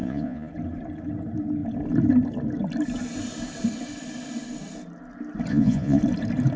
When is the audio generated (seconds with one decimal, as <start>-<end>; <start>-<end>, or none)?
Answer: 0.0-0.5; 5.5-6.0